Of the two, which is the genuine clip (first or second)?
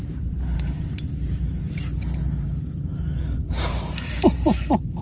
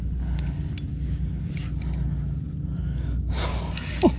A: second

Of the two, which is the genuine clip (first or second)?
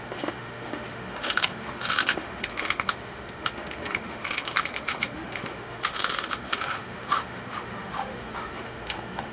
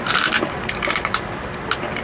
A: second